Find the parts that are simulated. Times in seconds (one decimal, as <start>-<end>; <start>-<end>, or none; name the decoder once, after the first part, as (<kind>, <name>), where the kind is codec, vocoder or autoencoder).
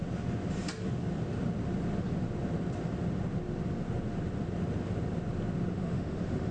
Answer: 5.7-6.5 (autoencoder, DAC-VAE)